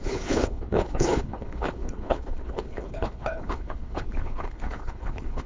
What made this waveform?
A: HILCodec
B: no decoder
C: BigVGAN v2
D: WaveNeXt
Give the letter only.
A